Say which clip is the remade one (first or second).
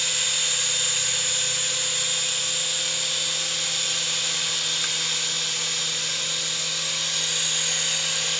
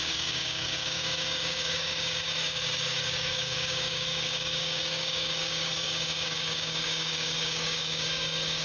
second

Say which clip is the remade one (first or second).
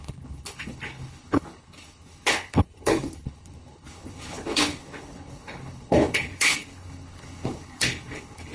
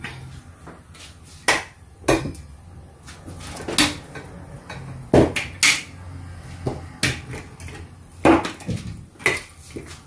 first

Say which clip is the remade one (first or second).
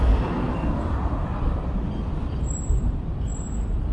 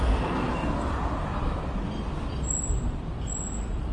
first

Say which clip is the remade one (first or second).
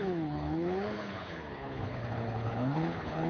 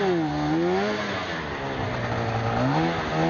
first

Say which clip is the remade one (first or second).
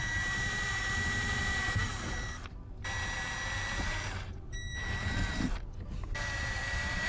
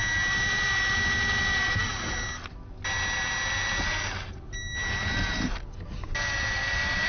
first